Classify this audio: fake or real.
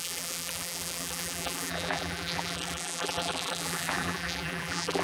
fake